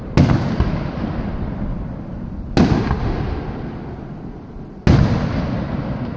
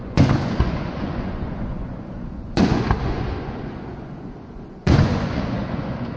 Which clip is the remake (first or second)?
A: second